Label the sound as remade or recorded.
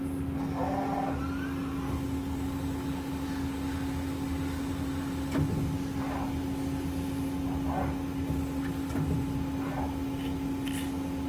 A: recorded